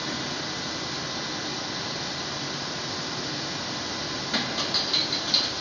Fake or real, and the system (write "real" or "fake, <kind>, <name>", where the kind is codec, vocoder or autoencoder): real